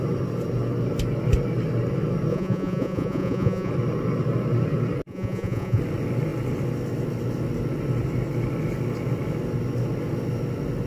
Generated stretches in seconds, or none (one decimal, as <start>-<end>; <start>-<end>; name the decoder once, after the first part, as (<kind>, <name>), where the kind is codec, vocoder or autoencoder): 2.3-3.7 (vocoder, Vocos); 5.1-5.8